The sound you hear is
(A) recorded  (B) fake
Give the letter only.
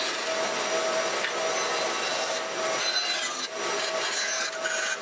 A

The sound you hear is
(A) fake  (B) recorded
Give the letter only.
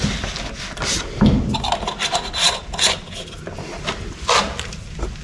B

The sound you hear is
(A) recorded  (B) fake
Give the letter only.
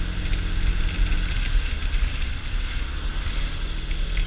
A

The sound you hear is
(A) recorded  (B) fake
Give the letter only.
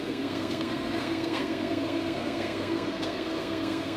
B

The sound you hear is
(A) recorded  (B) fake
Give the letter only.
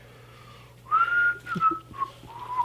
A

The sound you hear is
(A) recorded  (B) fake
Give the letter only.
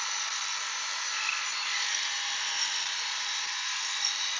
A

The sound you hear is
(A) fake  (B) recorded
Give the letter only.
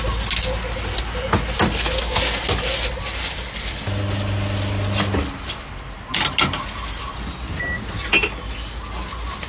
B